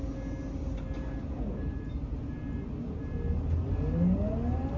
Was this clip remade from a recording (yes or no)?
no